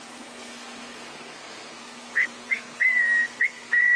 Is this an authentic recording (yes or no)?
no